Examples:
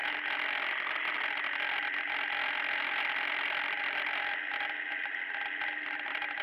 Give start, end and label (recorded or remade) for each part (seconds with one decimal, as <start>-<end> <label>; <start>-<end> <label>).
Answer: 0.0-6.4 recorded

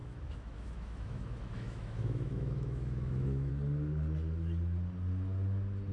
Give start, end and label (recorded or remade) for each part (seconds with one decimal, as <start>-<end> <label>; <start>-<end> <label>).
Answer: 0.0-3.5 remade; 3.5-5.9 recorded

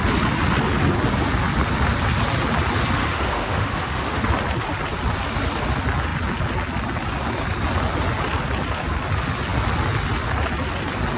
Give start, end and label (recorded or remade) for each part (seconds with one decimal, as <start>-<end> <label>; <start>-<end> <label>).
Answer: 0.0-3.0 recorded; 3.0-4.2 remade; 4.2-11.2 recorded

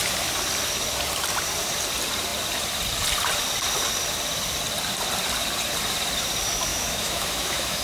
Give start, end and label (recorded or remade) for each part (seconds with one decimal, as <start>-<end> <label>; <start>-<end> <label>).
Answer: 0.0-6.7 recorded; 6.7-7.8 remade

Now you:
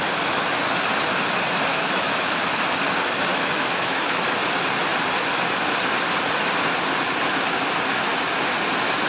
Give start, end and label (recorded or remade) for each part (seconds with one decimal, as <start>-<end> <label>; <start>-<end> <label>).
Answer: 0.0-1.7 recorded; 1.7-2.3 remade; 2.3-3.3 recorded; 3.3-4.2 remade; 4.2-9.1 recorded

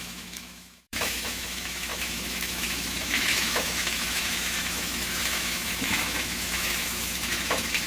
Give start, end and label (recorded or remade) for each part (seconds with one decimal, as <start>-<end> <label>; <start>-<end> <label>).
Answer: 0.0-7.9 remade

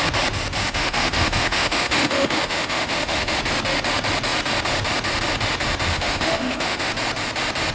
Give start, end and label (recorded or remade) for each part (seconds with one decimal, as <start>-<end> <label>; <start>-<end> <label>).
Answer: 0.0-0.6 recorded; 0.6-3.4 remade; 3.4-5.9 recorded; 5.9-6.9 remade; 6.9-7.7 recorded